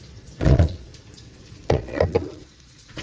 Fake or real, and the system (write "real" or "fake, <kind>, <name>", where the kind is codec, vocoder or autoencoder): fake, vocoder, Vocos